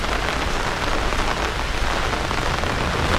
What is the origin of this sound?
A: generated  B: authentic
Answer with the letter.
B